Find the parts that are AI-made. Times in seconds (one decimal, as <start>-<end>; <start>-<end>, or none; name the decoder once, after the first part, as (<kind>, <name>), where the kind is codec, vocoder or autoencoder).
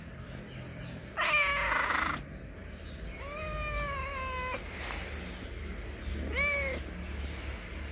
none